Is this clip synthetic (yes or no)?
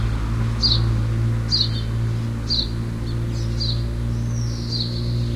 no